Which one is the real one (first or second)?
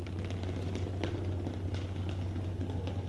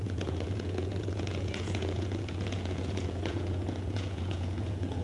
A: first